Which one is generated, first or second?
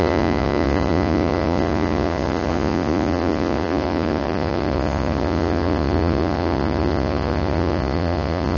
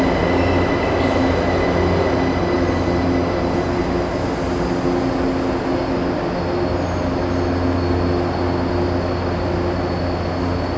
first